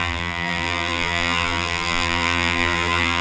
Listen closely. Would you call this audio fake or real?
fake